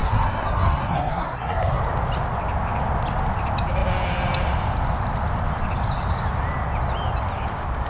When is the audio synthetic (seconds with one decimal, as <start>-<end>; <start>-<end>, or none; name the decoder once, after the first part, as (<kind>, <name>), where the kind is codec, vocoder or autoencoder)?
0.0-1.8 (codec, SNAC)